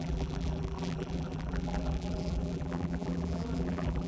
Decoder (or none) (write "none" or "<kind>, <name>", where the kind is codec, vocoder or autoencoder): vocoder, BigVGAN v2